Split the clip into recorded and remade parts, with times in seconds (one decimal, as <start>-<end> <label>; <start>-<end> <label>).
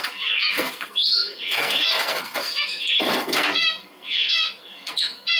0.0-5.4 remade